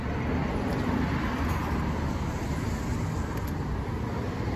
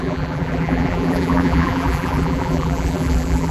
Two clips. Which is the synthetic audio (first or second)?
second